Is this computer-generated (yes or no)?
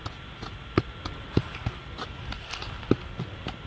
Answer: no